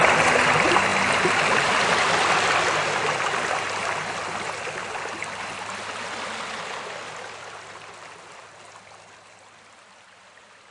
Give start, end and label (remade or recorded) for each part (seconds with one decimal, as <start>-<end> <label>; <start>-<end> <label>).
0.0-10.7 recorded